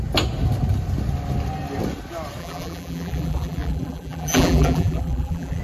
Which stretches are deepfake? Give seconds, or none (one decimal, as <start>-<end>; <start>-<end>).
2.4-5.6